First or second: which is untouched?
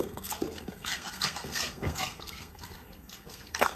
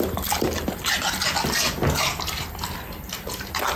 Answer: second